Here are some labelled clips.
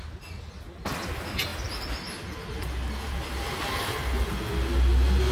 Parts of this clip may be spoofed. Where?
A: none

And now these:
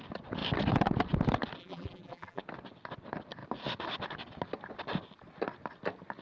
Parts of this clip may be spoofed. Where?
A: 1.6-2.4 (vocoder, BigVGAN v2)